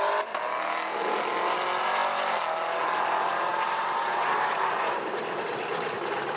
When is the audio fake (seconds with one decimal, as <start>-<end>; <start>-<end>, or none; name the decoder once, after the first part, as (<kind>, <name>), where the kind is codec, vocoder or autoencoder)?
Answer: 3.5-5.2 (vocoder, BigVGAN v2)